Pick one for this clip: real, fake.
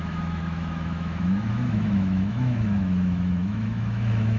fake